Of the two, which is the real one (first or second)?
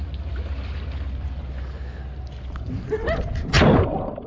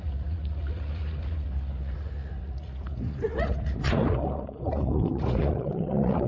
first